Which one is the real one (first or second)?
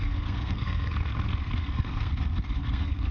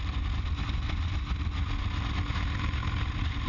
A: second